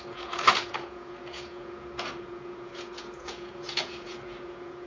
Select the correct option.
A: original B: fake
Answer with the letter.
B